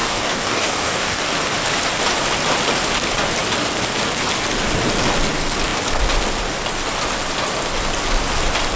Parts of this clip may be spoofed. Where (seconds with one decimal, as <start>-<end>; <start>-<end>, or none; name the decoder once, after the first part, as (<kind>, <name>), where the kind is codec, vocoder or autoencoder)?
0.0-1.2 (codec, DAC)